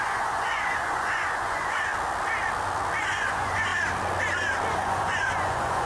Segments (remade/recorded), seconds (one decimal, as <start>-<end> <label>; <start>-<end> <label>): 0.0-1.9 remade; 1.9-3.0 recorded; 3.0-3.7 remade; 3.7-4.7 recorded; 4.7-5.9 remade